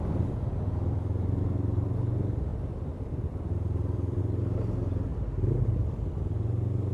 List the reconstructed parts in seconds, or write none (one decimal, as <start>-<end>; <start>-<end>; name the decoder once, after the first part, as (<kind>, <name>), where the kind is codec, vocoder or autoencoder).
2.5-4.2 (vocoder, BigVGAN v2); 5.1-6.2